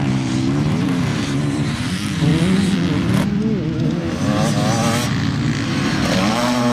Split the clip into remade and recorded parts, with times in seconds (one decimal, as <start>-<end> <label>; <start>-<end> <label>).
0.0-2.3 remade; 2.3-6.3 recorded; 6.3-6.7 remade